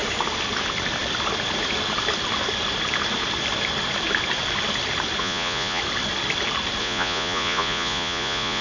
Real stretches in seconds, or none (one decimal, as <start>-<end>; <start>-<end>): 0.0-5.2; 5.8-6.8